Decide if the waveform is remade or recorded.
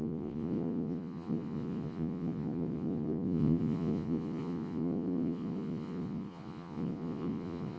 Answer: remade